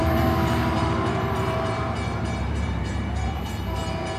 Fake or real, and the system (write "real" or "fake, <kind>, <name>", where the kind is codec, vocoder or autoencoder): fake, vocoder, BigVGAN v2